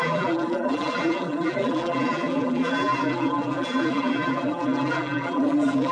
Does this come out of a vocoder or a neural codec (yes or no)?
yes